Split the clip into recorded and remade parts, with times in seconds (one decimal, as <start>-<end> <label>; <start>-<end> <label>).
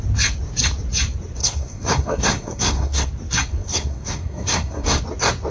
0.0-1.4 recorded; 1.4-3.1 remade; 3.1-3.5 recorded; 3.5-5.0 remade; 5.0-5.5 recorded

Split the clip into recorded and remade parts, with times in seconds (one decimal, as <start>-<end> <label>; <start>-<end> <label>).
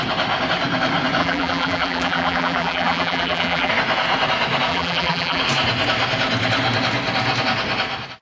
0.0-1.2 recorded; 1.2-3.7 remade; 3.7-4.7 recorded; 4.7-5.4 remade; 5.4-8.2 recorded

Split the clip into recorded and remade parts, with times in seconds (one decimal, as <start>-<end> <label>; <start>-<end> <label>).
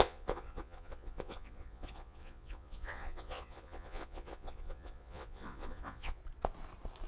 0.0-6.2 remade; 6.2-7.1 recorded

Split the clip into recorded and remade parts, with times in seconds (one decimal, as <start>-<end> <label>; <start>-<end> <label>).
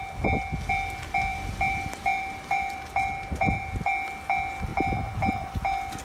0.0-1.3 recorded; 1.3-3.9 remade; 3.9-6.0 recorded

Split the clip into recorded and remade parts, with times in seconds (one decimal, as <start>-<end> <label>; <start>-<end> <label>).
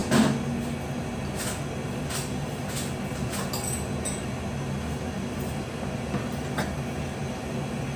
0.0-8.0 recorded